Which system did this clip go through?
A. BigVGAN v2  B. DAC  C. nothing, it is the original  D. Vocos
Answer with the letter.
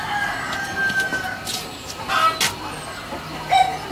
C